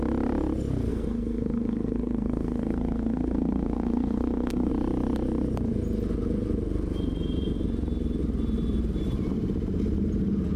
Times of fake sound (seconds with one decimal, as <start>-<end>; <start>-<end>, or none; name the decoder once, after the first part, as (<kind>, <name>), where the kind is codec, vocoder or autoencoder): 0.9-4.7 (codec, SNAC)